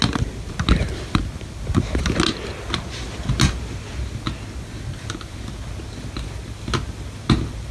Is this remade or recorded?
recorded